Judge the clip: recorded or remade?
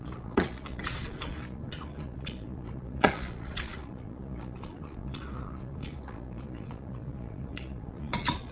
remade